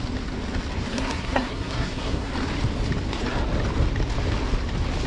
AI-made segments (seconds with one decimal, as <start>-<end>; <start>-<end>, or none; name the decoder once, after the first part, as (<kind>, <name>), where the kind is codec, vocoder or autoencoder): 0.9-2.3 (codec, SNAC)